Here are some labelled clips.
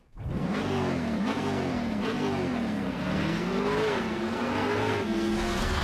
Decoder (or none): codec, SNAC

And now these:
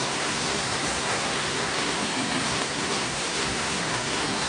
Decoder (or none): codec, SNAC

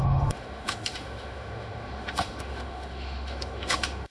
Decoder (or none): autoencoder, DAC-VAE